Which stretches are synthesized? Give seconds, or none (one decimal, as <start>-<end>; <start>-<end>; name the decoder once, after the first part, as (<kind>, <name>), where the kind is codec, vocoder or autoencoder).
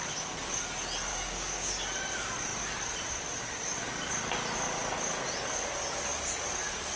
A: 1.1-1.8 (codec, DAC)